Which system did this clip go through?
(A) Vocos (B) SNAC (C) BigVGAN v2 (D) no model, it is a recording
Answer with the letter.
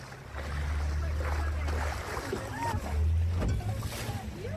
D